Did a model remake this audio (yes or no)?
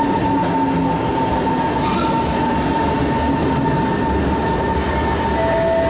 no